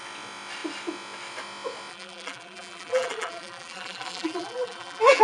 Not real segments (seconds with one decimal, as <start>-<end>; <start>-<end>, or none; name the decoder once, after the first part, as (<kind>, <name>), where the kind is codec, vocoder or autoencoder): 1.9-5.2 (vocoder, BigVGAN v2)